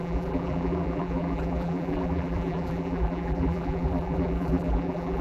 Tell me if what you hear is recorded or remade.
remade